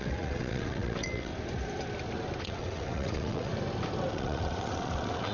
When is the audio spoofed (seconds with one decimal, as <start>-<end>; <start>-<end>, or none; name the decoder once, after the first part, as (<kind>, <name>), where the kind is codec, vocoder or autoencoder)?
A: 0.0-1.3 (vocoder, WaveNeXt); 2.4-3.5; 4.1-5.3

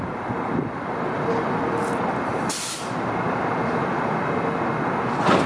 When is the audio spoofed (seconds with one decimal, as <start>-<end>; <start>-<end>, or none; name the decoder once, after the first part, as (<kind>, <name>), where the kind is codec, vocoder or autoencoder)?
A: 2.3-3.1 (vocoder, BigVGAN v2)

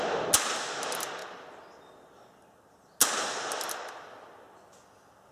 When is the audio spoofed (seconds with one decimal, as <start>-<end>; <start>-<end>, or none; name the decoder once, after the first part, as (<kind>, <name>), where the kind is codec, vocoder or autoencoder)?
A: none